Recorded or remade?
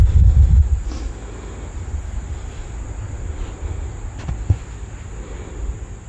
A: recorded